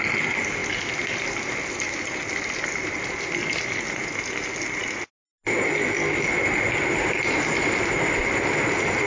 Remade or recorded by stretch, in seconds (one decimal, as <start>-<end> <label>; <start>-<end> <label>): 0.0-9.1 recorded